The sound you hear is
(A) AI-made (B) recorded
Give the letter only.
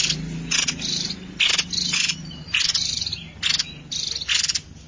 B